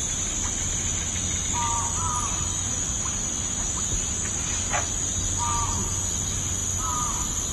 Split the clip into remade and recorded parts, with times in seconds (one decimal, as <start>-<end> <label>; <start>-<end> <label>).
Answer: 0.0-7.5 recorded